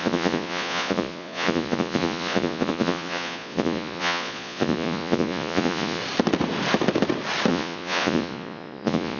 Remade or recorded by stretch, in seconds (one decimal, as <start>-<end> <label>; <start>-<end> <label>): 0.0-6.0 remade; 6.0-7.5 recorded; 7.5-9.2 remade